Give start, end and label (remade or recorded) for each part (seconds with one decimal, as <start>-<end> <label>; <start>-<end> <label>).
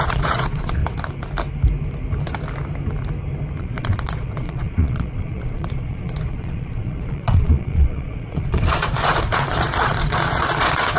0.0-0.8 remade; 0.8-3.6 recorded; 3.6-11.0 remade